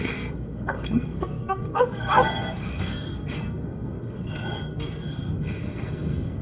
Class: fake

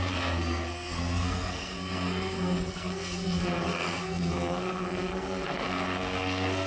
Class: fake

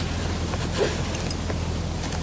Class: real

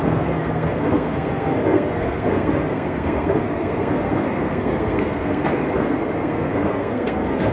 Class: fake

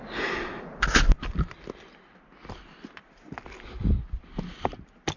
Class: real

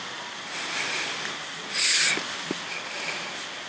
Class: real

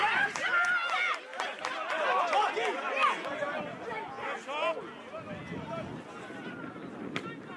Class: real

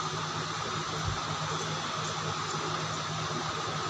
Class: real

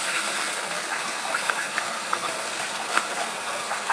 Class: fake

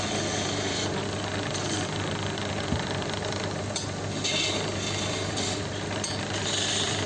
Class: real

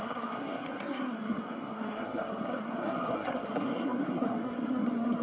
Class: fake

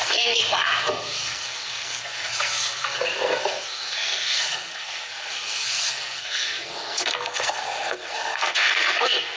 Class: fake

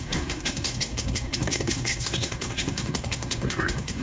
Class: fake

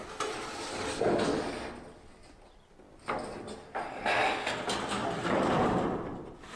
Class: real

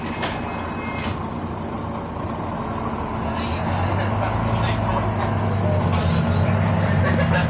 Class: real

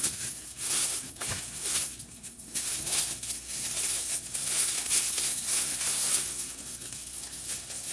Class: fake